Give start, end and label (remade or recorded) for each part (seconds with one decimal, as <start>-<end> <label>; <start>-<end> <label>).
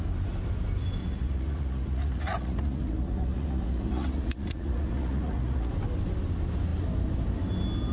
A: 0.0-1.0 recorded; 1.0-5.7 remade; 5.7-7.9 recorded